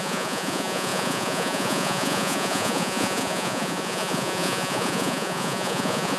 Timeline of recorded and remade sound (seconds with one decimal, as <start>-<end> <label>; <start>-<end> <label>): 0.0-6.2 remade